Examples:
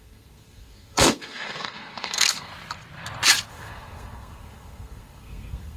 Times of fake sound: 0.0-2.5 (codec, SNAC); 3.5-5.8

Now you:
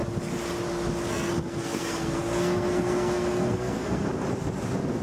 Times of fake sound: 1.1-4.1 (codec, SNAC)

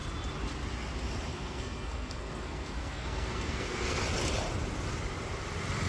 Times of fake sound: 1.3-4.0 (codec, SNAC)